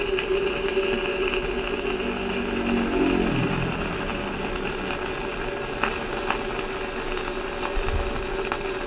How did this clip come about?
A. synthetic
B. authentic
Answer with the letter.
B